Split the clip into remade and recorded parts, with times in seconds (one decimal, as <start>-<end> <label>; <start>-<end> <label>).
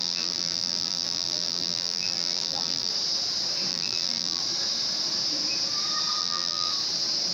0.0-2.9 remade; 2.9-3.7 recorded; 3.7-4.4 remade; 4.4-6.2 recorded; 6.2-6.7 remade; 6.7-7.3 recorded